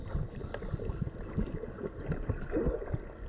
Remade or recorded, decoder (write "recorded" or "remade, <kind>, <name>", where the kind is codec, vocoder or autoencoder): recorded